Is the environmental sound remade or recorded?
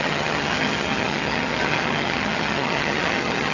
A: remade